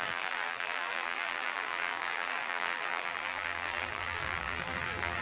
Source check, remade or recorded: remade